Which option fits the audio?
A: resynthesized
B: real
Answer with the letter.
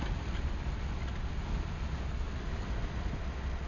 B